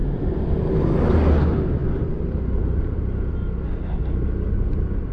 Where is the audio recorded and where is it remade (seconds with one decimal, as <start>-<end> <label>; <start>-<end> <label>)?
0.0-5.1 recorded